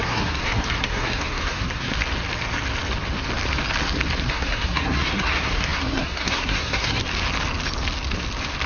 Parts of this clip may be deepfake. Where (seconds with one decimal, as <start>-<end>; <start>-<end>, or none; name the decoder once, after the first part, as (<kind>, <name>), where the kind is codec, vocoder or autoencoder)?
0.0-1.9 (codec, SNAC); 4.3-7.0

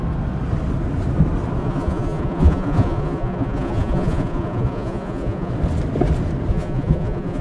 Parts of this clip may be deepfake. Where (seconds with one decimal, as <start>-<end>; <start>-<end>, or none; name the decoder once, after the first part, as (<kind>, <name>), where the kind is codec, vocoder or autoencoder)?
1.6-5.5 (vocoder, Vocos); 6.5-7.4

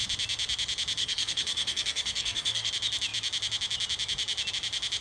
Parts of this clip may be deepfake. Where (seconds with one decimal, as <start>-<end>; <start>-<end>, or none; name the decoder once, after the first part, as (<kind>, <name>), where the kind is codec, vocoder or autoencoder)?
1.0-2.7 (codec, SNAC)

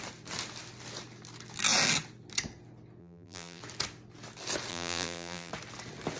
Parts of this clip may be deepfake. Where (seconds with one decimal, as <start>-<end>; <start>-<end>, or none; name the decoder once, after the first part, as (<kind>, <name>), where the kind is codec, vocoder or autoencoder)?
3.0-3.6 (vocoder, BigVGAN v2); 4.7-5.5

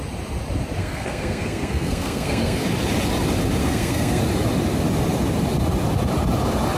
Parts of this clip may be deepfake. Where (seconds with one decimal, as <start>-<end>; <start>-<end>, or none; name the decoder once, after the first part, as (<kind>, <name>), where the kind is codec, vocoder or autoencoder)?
0.8-2.7 (codec, SNAC); 3.6-4.2